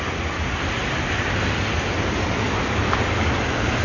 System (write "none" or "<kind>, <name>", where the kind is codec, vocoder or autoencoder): none